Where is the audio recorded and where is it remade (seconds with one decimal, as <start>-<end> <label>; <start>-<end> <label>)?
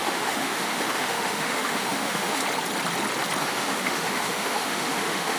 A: 0.0-2.4 remade; 2.4-3.4 recorded; 3.4-5.4 remade